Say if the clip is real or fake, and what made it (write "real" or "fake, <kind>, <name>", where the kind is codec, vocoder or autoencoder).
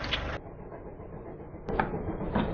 real